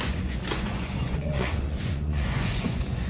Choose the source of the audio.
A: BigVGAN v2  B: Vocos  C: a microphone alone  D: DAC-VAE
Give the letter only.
B